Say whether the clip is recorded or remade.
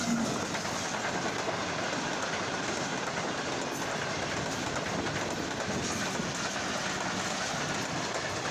recorded